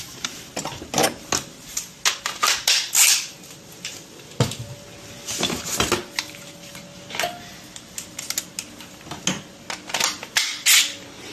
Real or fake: real